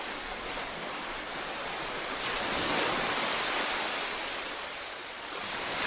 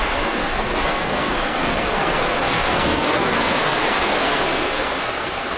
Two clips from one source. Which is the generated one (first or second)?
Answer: second